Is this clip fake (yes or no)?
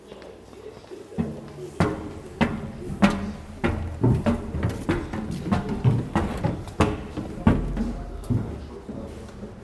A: no